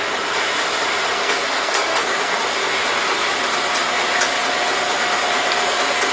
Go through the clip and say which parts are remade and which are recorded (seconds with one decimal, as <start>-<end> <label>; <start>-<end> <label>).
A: 0.0-1.1 recorded; 1.1-2.4 remade; 2.4-6.1 recorded

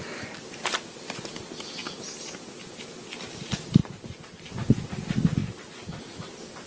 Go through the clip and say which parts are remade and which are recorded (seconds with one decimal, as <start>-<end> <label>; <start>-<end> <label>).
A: 0.0-1.8 recorded; 1.8-2.9 remade; 2.9-3.8 recorded; 3.8-4.5 remade; 4.5-6.7 recorded